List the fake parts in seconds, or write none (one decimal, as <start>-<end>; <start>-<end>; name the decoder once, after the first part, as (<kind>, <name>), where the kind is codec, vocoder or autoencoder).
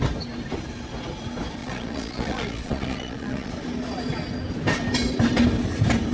1.6-3.5 (vocoder, Vocos)